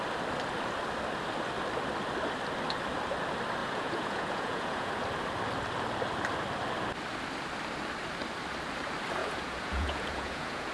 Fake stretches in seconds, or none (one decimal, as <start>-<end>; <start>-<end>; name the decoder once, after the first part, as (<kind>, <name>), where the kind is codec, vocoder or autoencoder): 3.6-4.9 (vocoder, Vocos); 9.2-10.7